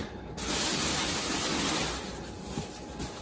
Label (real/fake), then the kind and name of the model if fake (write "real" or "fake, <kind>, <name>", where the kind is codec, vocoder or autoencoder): real